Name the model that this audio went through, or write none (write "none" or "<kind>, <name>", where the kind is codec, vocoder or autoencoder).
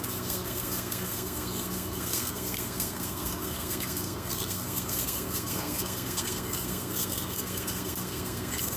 codec, SNAC